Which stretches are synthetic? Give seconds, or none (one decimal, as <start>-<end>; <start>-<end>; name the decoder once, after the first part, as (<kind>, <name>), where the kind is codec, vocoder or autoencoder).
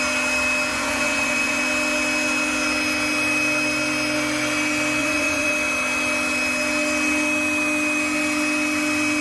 0.7-1.6 (vocoder, Vocos); 5.0-5.5